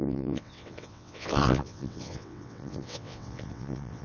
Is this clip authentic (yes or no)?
no